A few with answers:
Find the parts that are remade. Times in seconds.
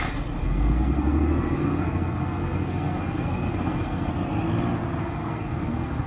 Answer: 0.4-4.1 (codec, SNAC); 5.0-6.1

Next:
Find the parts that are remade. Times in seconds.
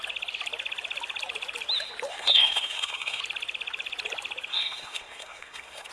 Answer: 2.1-3.2 (codec, SNAC); 4.5-5.9